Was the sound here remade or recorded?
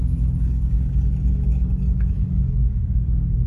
remade